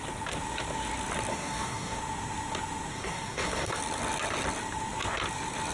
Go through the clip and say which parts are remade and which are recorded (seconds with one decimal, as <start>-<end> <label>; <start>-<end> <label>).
0.0-1.3 recorded; 1.3-2.0 remade; 2.0-2.9 recorded; 2.9-3.8 remade; 3.8-5.7 recorded